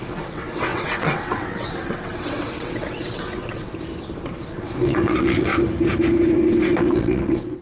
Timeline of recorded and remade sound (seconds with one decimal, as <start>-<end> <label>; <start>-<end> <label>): 0.0-3.7 remade; 3.7-4.5 recorded; 4.5-5.5 remade; 5.5-6.8 recorded; 6.8-7.6 remade